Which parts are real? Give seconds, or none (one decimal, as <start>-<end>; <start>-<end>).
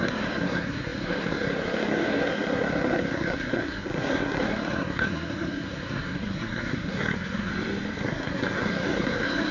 7.5-8.0